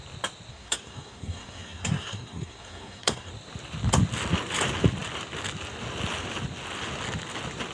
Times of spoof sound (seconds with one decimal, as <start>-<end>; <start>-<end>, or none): 0.5-3.3